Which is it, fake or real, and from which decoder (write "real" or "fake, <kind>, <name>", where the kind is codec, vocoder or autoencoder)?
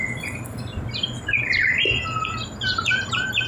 real